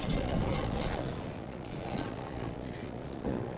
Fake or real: fake